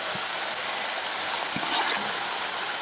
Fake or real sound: real